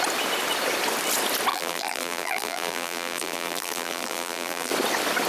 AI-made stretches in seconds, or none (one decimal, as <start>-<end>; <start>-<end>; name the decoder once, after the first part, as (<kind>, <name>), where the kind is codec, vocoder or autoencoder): 1.5-4.7 (vocoder, BigVGAN v2)